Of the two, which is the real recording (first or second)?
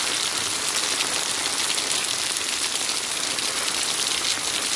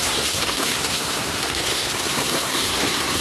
first